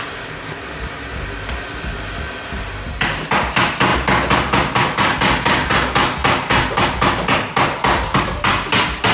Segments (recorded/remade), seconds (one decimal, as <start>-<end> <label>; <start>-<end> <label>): 0.0-9.1 recorded